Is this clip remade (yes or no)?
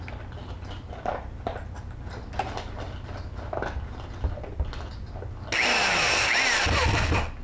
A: no